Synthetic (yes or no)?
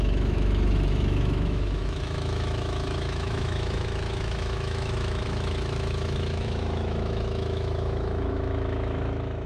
yes